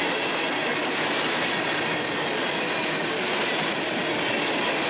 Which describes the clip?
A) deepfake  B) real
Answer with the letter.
B